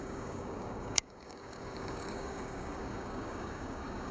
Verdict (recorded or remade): remade